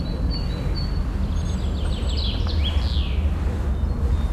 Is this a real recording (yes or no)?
yes